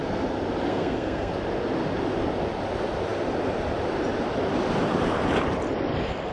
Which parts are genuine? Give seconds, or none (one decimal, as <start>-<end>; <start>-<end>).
0.0-0.7; 1.3-6.3